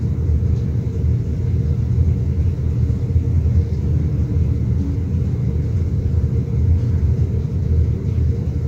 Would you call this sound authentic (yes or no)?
yes